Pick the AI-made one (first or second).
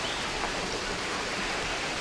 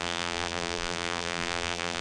second